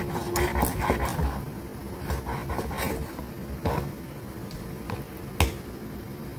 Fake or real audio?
real